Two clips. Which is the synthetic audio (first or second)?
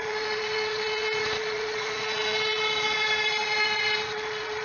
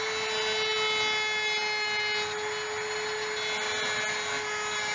first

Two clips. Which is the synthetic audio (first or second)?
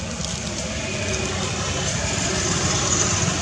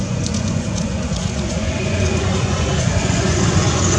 second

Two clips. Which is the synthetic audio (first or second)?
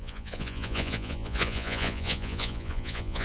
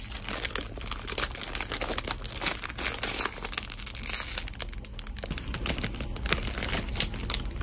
first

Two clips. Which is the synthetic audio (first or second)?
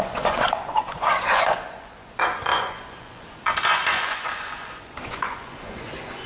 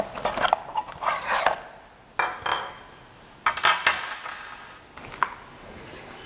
first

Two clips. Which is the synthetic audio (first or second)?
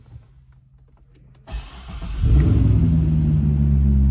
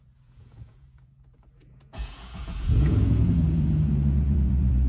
second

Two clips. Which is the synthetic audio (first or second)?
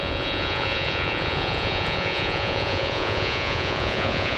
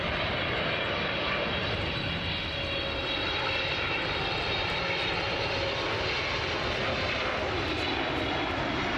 first